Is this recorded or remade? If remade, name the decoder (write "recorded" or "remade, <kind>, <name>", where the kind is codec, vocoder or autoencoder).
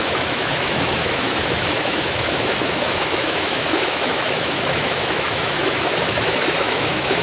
remade, autoencoder, DAC-VAE